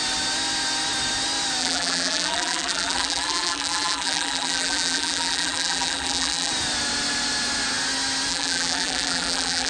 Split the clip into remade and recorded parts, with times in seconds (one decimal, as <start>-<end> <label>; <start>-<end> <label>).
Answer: 0.0-1.6 recorded; 1.6-6.5 remade; 6.5-8.3 recorded; 8.3-9.7 remade